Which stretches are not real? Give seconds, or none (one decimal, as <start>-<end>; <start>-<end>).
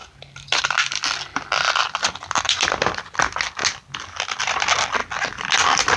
0.0-3.6; 4.4-5.0